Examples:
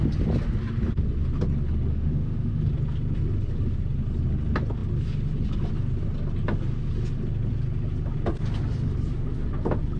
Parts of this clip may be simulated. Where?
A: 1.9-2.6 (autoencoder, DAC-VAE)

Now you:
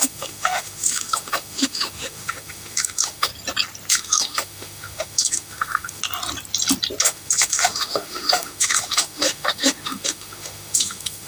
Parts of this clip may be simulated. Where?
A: 0.0-3.3 (autoencoder, DAC-VAE); 3.9-6.0; 7.0-11.3